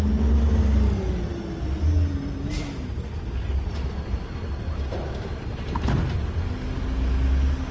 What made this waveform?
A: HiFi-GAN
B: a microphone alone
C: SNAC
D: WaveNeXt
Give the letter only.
B